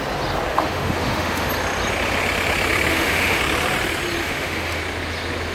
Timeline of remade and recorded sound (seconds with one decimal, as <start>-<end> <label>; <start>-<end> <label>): 0.0-0.5 recorded; 0.5-1.5 remade; 1.5-2.9 recorded; 2.9-3.4 remade; 3.4-4.2 recorded; 4.2-4.8 remade; 4.8-5.5 recorded